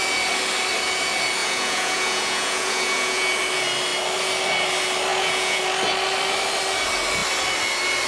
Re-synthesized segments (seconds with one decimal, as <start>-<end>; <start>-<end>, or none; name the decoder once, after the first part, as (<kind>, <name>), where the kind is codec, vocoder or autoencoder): 1.4-3.3 (vocoder, Vocos); 5.1-5.6